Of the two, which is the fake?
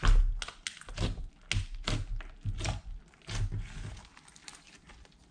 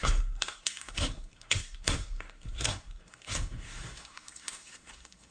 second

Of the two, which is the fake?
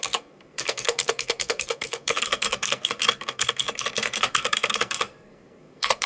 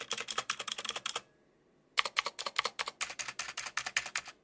first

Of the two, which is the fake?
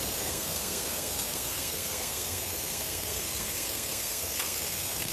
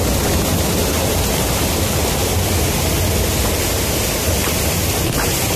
first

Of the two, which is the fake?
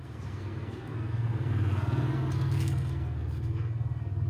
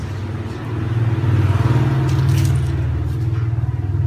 first